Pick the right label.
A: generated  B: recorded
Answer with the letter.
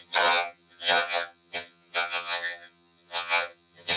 A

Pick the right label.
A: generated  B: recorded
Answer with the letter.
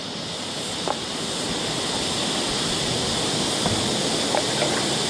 B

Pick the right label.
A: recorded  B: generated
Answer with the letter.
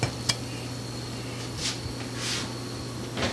A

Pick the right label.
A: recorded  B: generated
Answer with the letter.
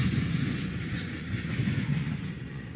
B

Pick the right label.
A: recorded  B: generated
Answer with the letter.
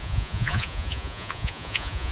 B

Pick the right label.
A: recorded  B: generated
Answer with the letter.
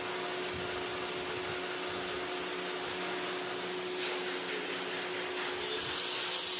A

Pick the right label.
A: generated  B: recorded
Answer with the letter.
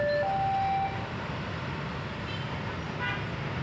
B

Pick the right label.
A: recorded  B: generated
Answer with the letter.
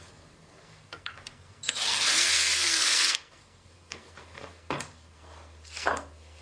B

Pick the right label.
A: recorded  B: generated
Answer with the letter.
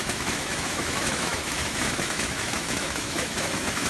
B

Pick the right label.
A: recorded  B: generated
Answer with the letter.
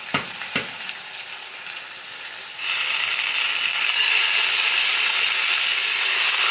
A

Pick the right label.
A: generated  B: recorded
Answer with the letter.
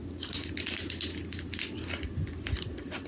B